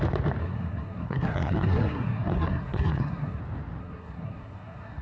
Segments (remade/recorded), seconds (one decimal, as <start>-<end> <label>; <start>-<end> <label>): 0.0-0.4 recorded; 0.4-3.4 remade; 3.4-3.8 recorded; 3.8-5.0 remade